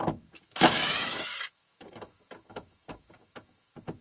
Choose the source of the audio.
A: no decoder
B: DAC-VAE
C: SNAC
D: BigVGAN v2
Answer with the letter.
B